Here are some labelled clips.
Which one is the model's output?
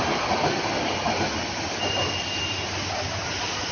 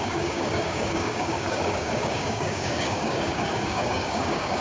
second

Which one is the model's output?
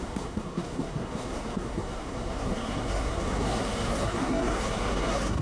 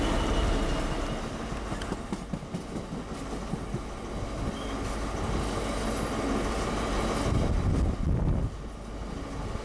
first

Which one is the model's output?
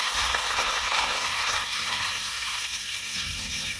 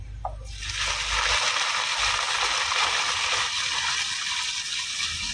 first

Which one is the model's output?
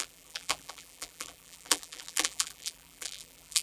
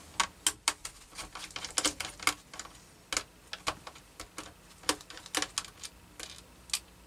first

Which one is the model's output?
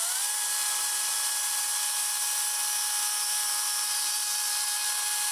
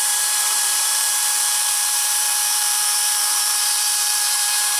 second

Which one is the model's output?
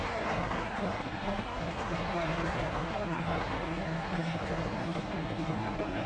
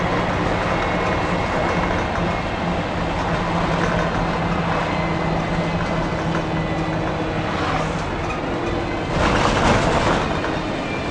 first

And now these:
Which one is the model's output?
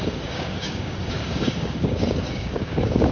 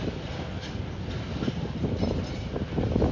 first